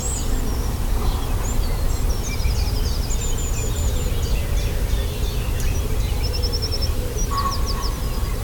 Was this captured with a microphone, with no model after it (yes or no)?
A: yes